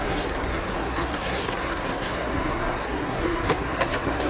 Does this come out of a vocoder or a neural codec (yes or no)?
yes